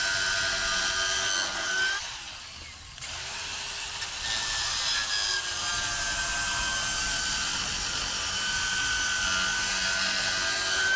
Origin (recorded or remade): recorded